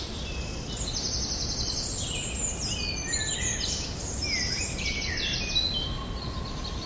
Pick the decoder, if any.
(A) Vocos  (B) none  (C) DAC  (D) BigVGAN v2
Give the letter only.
B